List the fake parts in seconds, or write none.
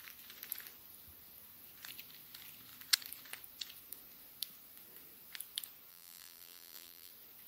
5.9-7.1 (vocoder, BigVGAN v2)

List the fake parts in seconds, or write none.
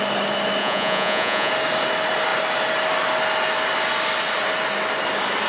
0.6-1.5 (vocoder, Vocos)